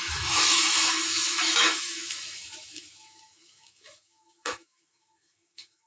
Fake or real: fake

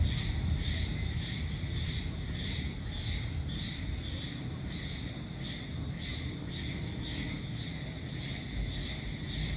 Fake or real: real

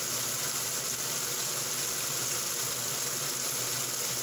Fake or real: real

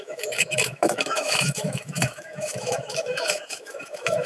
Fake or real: fake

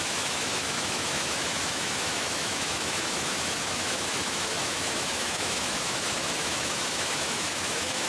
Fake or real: fake